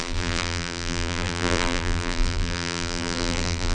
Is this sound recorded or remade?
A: remade